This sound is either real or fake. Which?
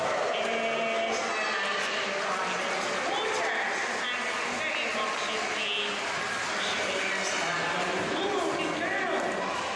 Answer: real